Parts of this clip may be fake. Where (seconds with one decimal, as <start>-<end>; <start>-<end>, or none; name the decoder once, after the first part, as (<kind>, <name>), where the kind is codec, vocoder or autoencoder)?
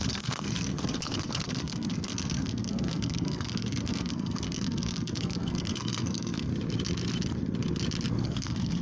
0.0-6.5 (codec, SNAC); 8.1-8.8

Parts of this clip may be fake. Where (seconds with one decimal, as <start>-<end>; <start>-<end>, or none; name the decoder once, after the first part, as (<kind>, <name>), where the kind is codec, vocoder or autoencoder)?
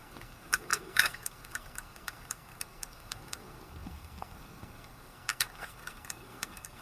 0.0-6.8 (codec, SNAC)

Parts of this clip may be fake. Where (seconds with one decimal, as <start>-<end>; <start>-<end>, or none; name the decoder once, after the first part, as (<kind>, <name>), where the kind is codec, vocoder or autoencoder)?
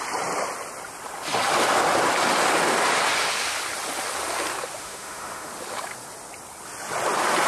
4.8-5.5 (autoencoder, DAC-VAE)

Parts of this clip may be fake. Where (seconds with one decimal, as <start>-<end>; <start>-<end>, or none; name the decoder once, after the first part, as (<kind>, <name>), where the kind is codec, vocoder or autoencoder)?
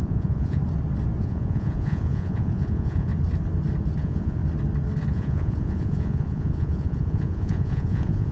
0.0-0.6 (vocoder, Vocos); 1.2-3.1; 4.0-4.4; 5.1-8.3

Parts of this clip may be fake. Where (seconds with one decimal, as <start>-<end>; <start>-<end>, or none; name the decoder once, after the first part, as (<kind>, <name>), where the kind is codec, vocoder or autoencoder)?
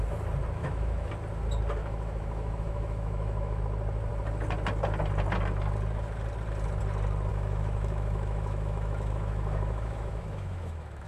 0.6-1.1 (autoencoder, DAC-VAE); 1.8-3.6; 7.3-11.1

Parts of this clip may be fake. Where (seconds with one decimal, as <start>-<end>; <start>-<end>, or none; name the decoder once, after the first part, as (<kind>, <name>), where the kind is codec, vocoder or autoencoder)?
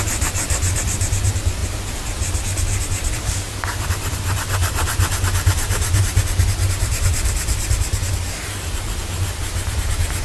0.0-10.2 (vocoder, BigVGAN v2)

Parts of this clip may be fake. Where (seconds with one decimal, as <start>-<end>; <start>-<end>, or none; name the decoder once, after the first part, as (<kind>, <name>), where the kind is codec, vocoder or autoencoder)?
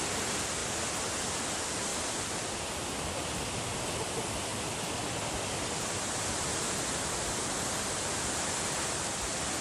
4.5-6.0 (vocoder, BigVGAN v2)